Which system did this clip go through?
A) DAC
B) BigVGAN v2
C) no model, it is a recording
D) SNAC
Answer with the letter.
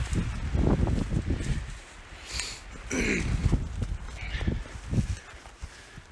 C